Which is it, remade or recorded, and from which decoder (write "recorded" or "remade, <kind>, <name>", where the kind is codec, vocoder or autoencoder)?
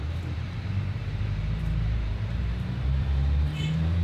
remade, vocoder, BigVGAN v2